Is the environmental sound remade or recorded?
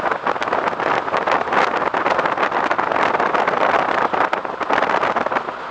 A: recorded